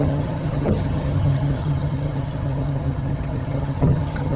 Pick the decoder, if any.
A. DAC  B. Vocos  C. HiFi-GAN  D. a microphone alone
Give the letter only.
C